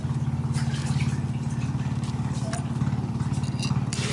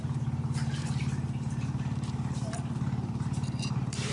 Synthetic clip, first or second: second